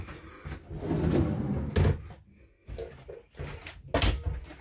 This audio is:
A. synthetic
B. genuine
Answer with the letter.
B